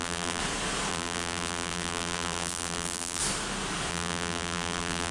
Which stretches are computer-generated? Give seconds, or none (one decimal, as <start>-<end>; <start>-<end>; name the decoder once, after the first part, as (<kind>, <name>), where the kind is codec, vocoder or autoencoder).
0.0-0.4 (vocoder, BigVGAN v2); 0.9-3.2; 3.9-5.1